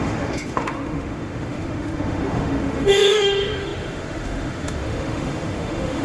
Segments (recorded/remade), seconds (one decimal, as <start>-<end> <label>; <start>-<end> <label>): 0.0-6.0 remade